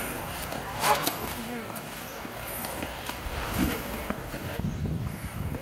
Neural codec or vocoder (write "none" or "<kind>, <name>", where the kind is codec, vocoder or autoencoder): codec, DAC